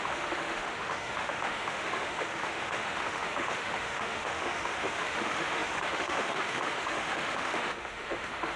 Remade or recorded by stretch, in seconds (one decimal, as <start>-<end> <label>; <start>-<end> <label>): 0.0-8.6 remade